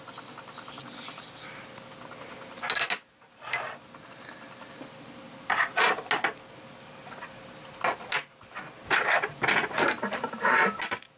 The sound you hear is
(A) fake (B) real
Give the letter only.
B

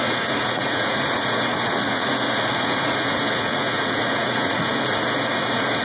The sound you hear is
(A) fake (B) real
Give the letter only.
A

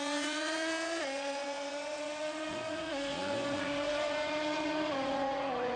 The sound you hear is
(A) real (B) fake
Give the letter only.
B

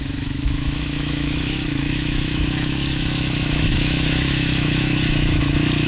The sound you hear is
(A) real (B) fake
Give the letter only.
B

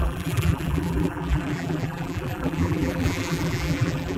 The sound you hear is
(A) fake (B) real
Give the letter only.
A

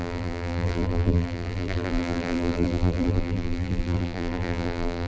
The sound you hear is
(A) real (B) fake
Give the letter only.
B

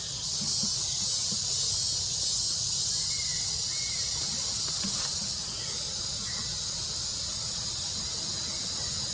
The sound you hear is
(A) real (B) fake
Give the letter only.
A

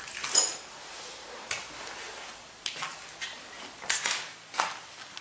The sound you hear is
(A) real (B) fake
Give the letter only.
A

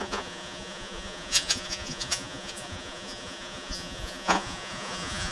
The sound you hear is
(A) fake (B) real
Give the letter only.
A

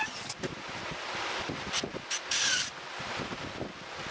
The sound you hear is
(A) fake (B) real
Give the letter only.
B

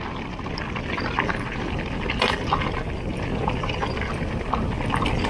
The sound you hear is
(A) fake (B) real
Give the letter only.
B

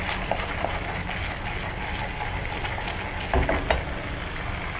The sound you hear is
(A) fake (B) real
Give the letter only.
B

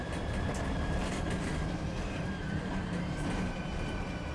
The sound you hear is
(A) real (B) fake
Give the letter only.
B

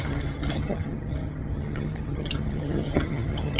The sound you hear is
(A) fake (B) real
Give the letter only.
A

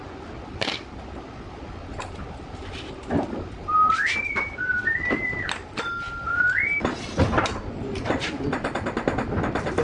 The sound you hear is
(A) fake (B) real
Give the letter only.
B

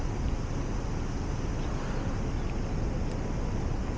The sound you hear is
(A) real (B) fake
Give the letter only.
A